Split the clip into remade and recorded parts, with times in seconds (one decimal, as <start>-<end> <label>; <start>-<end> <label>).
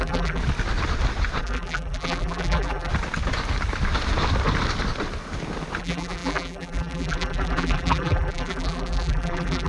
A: 0.0-0.4 remade; 0.4-1.4 recorded; 1.4-2.9 remade; 2.9-5.8 recorded; 5.8-9.7 remade